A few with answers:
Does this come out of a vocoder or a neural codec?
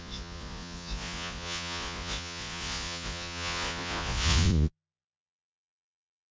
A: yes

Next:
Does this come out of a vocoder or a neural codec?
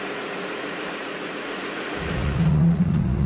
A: yes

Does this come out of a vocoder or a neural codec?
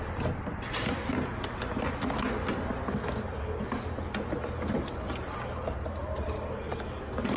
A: no